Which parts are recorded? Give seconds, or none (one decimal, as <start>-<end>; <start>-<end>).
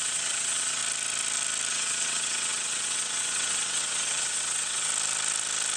0.8-1.7; 4.9-5.8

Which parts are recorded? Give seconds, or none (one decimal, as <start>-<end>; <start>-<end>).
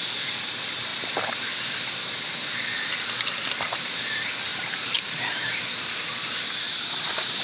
0.0-4.5; 6.3-7.4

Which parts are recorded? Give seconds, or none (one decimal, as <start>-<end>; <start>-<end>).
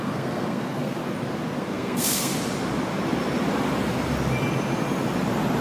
1.0-1.6; 2.3-5.6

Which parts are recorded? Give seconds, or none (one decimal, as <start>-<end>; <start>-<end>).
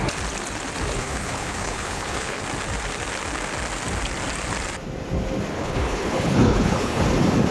0.0-1.0; 2.4-5.5; 7.0-7.5